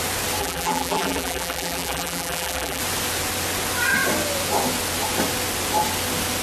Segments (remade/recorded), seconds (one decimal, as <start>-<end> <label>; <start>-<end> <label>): 0.0-0.4 recorded; 0.4-2.8 remade; 2.8-6.4 recorded